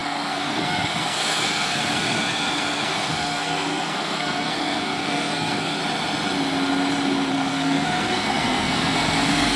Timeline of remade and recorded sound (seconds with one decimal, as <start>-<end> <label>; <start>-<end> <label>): 0.0-5.8 remade; 5.8-7.3 recorded; 7.3-9.6 remade